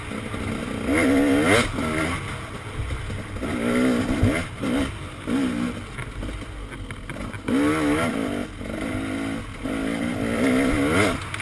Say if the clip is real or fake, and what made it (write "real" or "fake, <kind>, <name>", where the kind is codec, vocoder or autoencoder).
real